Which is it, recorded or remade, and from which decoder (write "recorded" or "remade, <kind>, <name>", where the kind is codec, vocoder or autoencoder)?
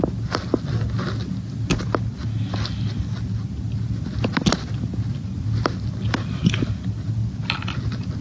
recorded